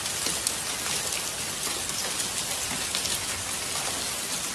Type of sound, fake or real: real